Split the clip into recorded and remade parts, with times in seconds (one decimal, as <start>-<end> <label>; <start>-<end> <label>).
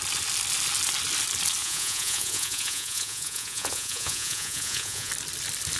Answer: 0.0-1.6 recorded; 1.6-5.1 remade; 5.1-5.8 recorded